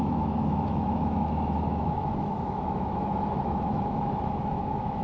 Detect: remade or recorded remade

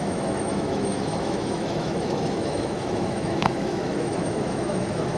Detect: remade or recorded remade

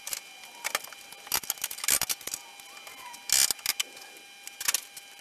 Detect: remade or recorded recorded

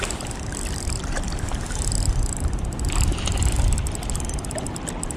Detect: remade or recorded recorded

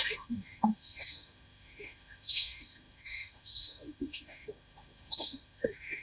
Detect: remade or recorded remade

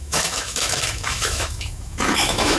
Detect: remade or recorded remade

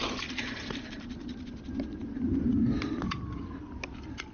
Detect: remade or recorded recorded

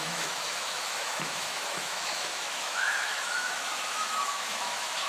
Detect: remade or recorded remade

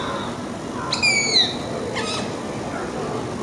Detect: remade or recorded recorded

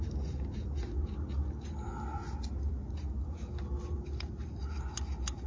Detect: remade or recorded recorded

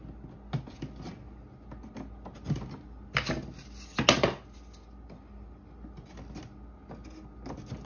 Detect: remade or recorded recorded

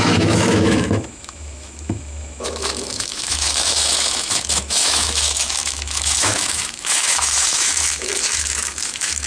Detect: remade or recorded remade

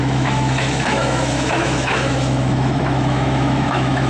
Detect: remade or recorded remade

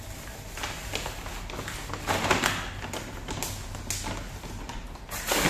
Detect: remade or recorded recorded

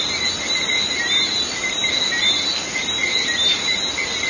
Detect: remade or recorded recorded